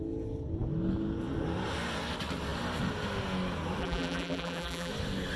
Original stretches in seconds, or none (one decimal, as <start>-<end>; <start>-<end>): 0.0-3.8; 4.9-5.4